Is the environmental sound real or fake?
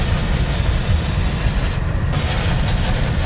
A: real